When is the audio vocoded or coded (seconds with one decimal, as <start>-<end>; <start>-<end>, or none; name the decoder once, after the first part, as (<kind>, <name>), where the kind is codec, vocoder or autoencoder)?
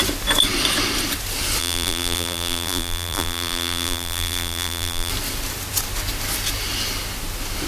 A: 1.6-5.1 (vocoder, BigVGAN v2)